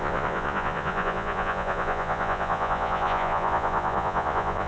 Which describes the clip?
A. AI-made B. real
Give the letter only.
A